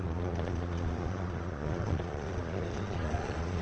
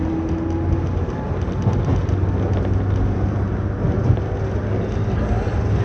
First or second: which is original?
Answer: second